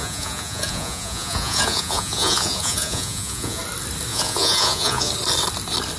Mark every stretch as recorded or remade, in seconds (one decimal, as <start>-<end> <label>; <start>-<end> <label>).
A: 0.0-3.6 remade; 3.6-4.1 recorded; 4.1-5.1 remade; 5.1-6.0 recorded